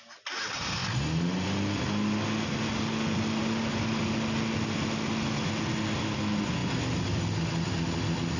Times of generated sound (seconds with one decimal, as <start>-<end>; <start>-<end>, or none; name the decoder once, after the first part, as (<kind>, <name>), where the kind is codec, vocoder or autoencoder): none

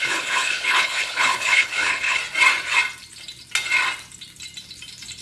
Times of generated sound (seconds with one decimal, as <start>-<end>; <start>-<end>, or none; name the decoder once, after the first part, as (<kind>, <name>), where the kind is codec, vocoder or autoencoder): 0.0-2.2 (codec, HILCodec)

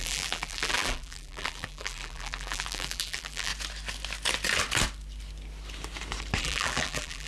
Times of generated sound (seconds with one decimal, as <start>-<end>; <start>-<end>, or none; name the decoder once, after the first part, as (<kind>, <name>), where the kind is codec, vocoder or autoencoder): 0.0-3.5 (vocoder, BigVGAN v2); 6.4-7.3

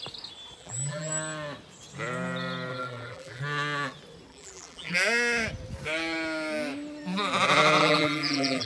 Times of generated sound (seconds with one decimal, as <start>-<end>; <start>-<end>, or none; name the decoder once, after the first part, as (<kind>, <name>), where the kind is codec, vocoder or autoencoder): 0.6-1.1 (vocoder, BigVGAN v2); 2.7-3.4; 4.3-4.9; 7.8-8.7